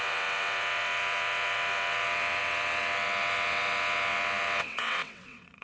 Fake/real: fake